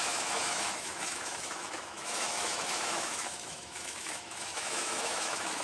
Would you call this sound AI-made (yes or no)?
yes